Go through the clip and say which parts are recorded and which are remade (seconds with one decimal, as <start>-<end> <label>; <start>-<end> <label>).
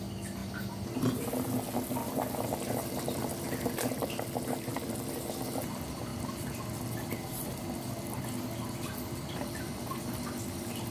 0.0-2.0 recorded; 2.0-5.6 remade; 5.6-10.9 recorded